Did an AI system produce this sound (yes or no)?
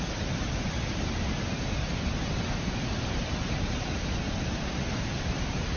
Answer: no